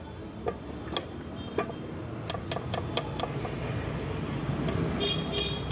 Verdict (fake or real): real